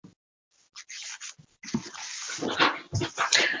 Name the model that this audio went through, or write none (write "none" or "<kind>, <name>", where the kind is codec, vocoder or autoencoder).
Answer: none